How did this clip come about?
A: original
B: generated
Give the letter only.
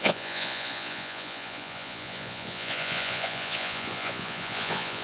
B